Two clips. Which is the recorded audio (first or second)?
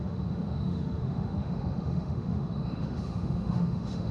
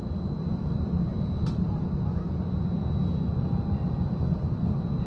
second